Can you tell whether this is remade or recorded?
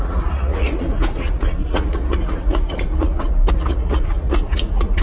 remade